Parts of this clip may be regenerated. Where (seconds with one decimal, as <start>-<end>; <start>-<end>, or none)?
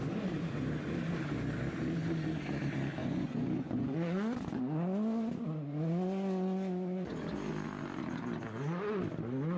3.0-4.6